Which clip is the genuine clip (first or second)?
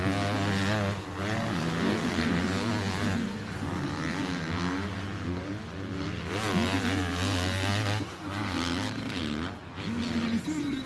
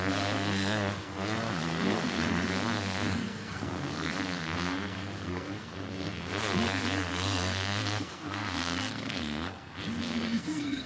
first